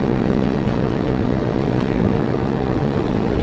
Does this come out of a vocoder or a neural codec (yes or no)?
yes